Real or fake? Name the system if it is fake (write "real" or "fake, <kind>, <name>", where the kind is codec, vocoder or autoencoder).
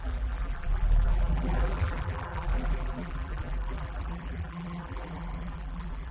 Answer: fake, vocoder, BigVGAN v2